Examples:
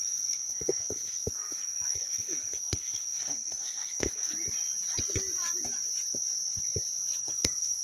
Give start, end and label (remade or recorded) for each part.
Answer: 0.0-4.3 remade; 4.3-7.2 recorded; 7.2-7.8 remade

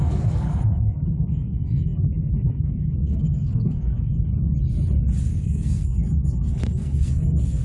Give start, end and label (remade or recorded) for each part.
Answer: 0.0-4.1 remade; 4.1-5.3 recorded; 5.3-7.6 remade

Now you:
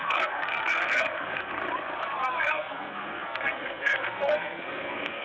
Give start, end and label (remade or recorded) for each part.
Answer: 0.0-1.6 remade; 1.6-2.4 recorded; 2.4-5.2 remade

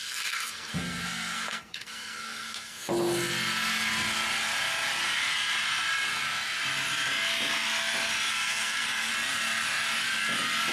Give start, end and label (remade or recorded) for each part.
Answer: 0.0-2.9 remade; 2.9-8.3 recorded; 8.3-9.1 remade; 9.1-10.7 recorded

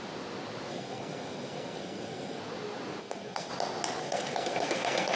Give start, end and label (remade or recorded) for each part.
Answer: 0.0-0.7 recorded; 0.7-2.4 remade; 2.4-3.0 recorded; 3.0-3.5 remade; 3.5-4.0 recorded; 4.0-5.2 remade

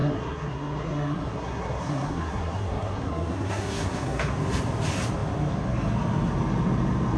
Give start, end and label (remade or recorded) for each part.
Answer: 0.0-4.3 remade; 4.3-7.2 recorded

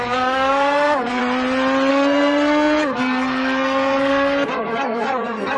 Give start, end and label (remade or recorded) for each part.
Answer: 0.0-1.2 remade; 1.2-1.9 recorded; 1.9-5.6 remade

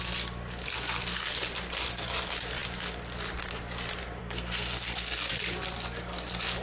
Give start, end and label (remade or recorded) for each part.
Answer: 0.0-4.2 recorded; 4.2-5.3 remade; 5.3-6.6 recorded